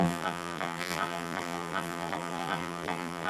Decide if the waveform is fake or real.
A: fake